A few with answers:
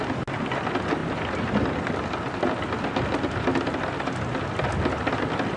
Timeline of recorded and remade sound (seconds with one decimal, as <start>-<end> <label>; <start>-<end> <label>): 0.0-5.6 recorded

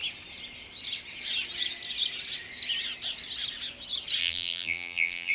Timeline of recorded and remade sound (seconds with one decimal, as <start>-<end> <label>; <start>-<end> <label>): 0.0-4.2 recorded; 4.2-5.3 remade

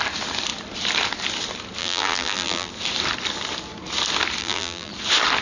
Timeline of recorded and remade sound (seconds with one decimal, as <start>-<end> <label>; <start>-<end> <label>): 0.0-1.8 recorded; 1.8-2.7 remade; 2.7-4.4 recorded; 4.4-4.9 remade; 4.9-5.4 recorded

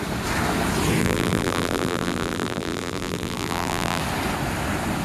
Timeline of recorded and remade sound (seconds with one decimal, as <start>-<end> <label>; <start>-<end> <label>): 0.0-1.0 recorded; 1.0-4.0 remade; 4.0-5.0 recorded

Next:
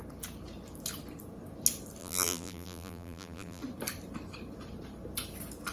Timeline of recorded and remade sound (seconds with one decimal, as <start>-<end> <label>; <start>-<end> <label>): 0.0-2.0 recorded; 2.0-3.6 remade; 3.6-5.7 recorded

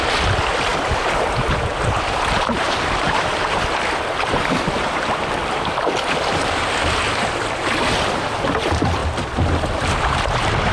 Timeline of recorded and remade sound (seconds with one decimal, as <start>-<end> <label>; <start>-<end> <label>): 0.0-10.7 remade

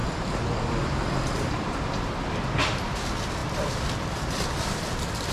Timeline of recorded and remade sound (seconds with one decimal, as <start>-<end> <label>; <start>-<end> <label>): 0.0-1.8 remade; 1.8-3.4 recorded; 3.4-5.3 remade

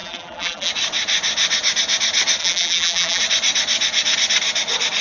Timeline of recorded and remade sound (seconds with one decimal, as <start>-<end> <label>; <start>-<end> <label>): 0.0-0.7 remade; 0.7-2.4 recorded; 2.4-3.2 remade; 3.2-5.0 recorded